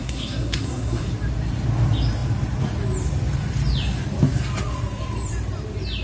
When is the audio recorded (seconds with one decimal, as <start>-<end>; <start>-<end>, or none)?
1.1-6.0